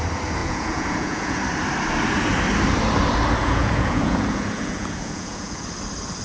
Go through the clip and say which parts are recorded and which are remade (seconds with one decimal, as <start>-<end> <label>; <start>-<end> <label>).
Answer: 0.0-0.4 recorded; 0.4-1.4 remade; 1.4-3.4 recorded; 3.4-5.6 remade; 5.6-6.2 recorded